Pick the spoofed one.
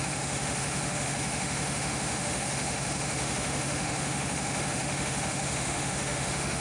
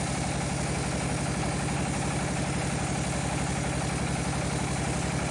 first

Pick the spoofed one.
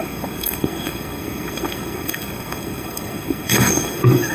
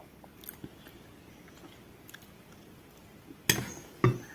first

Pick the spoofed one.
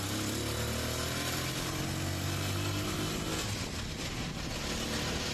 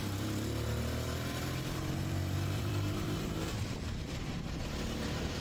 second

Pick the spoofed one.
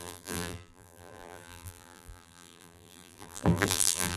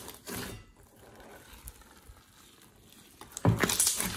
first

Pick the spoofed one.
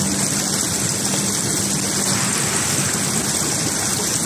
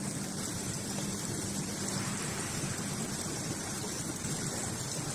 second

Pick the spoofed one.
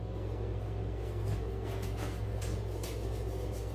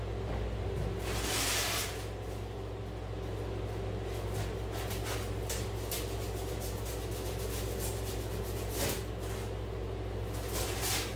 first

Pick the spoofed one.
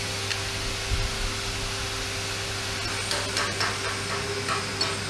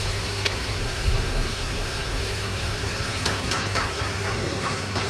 second